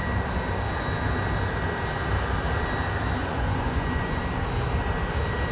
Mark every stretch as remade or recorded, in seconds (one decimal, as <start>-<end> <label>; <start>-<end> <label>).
0.0-3.2 recorded; 3.2-4.2 remade; 4.2-5.5 recorded